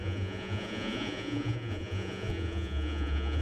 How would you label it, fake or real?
fake